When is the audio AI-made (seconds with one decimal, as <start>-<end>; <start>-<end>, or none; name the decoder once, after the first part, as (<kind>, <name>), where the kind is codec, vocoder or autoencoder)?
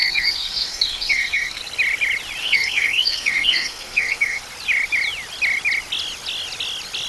0.0-1.6 (codec, SNAC); 2.4-4.4